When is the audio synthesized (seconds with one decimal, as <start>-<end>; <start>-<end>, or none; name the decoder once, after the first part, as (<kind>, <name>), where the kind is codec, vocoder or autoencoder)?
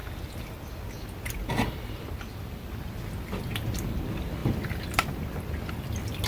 none